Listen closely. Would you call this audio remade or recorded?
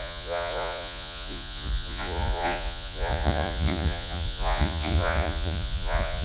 remade